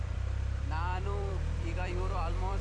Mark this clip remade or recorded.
remade